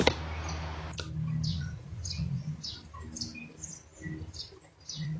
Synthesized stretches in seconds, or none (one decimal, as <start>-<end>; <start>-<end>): 1.5-2.9; 4.4-5.2